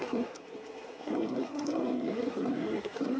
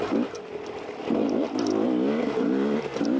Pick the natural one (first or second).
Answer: second